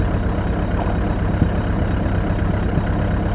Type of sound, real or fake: real